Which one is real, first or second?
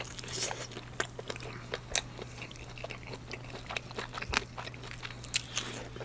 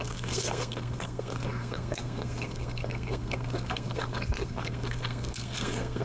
first